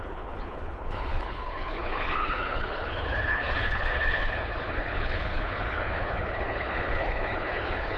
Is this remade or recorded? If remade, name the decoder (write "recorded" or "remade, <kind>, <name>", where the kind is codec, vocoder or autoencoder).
remade, codec, HILCodec